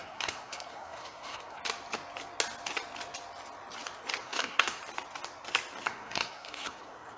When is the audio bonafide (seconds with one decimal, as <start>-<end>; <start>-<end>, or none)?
1.6-4.2; 4.8-5.9